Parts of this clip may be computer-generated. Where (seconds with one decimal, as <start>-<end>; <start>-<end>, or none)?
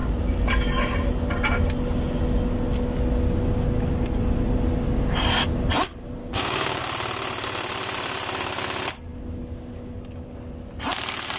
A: 6.2-6.8